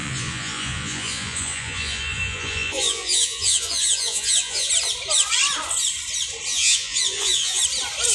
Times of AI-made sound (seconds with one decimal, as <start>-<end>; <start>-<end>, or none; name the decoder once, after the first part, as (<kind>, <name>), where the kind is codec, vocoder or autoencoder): 0.0-4.7 (vocoder, Vocos); 6.5-7.6